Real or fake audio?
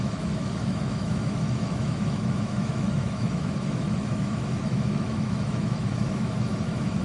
fake